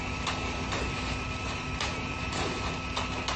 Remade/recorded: recorded